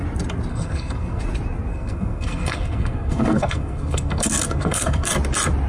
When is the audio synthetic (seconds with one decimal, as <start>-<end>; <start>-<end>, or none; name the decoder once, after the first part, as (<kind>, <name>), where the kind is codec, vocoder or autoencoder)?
0.5-1.2 (codec, SNAC); 1.7-5.1